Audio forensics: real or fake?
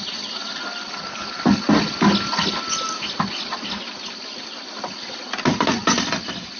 real